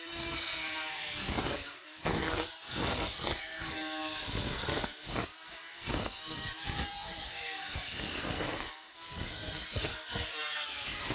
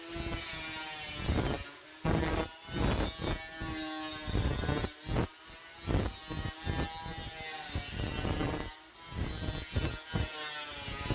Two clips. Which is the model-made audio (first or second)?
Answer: first